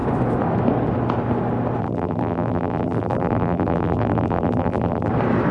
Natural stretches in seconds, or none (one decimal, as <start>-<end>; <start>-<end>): 0.0-1.8; 5.1-5.5